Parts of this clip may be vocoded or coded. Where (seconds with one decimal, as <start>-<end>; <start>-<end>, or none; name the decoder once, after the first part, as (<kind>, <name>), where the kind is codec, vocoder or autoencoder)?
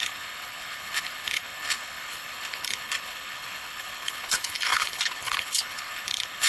0.0-6.5 (codec, HILCodec)